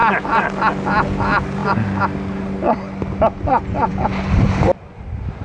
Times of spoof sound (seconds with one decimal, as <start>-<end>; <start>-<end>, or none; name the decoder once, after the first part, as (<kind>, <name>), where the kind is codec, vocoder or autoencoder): none